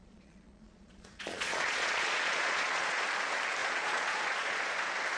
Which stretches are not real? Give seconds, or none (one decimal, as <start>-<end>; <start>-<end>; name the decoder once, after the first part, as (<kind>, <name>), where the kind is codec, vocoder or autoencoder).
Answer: 0.0-3.0 (vocoder, Vocos); 3.6-4.8